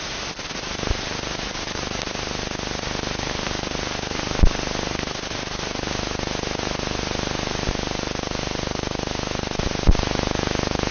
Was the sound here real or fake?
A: real